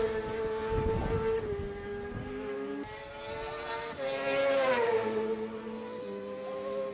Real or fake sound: real